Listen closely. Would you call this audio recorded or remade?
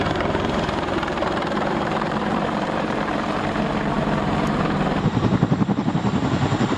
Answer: remade